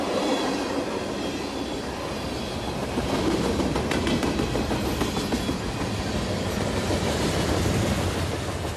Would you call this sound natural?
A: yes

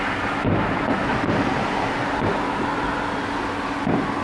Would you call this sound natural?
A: yes